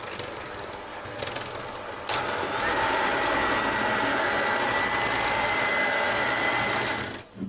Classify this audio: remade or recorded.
recorded